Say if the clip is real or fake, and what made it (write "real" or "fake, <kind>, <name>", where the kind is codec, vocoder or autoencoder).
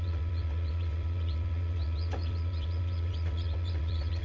fake, vocoder, WaveNeXt